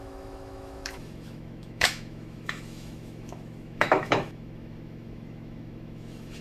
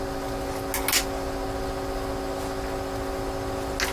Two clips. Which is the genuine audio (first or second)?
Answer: second